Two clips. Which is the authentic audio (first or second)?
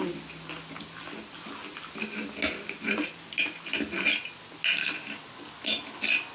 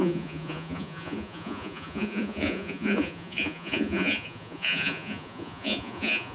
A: first